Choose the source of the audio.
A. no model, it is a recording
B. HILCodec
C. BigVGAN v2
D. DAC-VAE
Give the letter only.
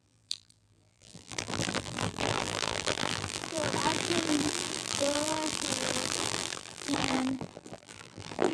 C